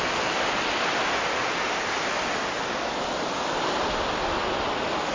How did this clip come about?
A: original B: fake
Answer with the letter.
A